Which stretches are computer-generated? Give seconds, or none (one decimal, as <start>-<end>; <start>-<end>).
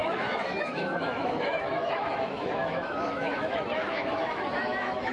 0.0-5.1